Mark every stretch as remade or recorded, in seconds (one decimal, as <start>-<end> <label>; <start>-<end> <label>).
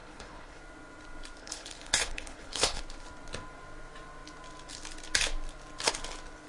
0.0-0.6 remade; 0.6-1.4 recorded; 1.4-2.8 remade; 2.8-6.5 recorded